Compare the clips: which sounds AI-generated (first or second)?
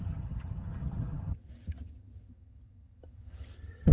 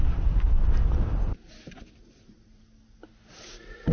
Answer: first